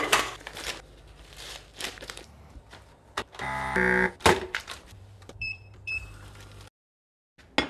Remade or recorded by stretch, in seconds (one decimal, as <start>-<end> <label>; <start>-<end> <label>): 0.0-1.7 recorded; 1.7-6.3 remade; 6.3-7.7 recorded